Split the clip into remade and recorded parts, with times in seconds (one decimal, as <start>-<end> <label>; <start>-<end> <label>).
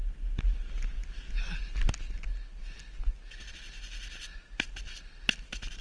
0.0-5.8 recorded